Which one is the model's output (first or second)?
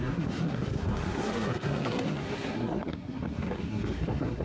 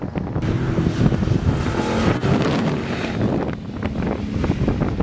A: first